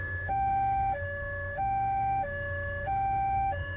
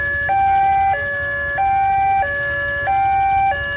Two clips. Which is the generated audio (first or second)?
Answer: first